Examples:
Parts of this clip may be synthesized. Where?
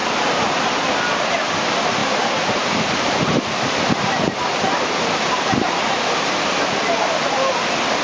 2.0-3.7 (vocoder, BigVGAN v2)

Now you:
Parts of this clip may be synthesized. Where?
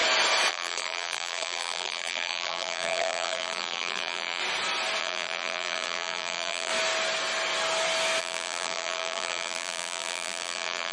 0.5-4.4 (vocoder, BigVGAN v2); 5.0-6.7; 8.2-10.9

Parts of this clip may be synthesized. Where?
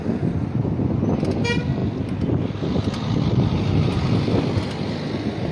none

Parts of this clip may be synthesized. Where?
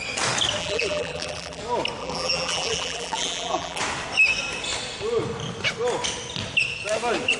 0.6-1.6 (vocoder, BigVGAN v2); 2.0-3.8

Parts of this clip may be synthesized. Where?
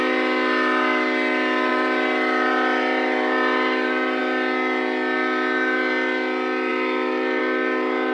1.7-4.2 (vocoder, BigVGAN v2); 6.7-7.4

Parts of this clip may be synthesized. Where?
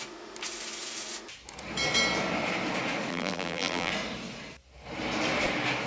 3.1-3.9 (vocoder, BigVGAN v2)